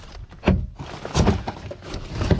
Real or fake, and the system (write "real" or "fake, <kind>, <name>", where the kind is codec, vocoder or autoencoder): real